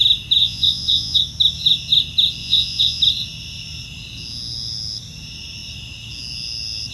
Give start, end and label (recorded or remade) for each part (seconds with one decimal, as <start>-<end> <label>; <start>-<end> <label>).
0.0-0.4 recorded; 0.4-1.2 remade; 1.2-2.4 recorded; 2.4-3.0 remade; 3.0-6.9 recorded